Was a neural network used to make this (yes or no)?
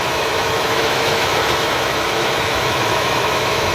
yes